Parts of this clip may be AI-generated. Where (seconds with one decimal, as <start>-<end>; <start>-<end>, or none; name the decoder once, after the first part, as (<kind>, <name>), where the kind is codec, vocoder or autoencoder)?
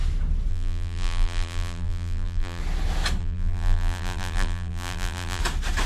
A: 0.5-2.6 (vocoder, BigVGAN v2); 3.2-5.4